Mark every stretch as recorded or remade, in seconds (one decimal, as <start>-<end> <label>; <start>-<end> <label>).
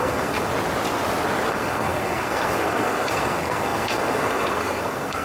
0.0-0.5 remade; 0.5-1.5 recorded; 1.5-5.2 remade